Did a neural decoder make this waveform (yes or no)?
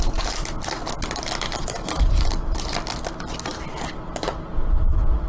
no